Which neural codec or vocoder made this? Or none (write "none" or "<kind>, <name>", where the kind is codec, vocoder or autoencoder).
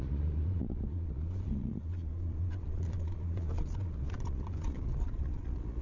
vocoder, Vocos